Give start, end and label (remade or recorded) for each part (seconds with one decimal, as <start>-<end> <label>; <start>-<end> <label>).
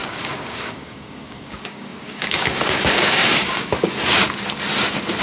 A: 0.0-3.7 remade; 3.7-5.2 recorded